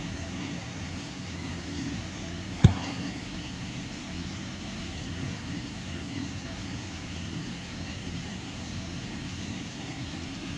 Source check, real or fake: fake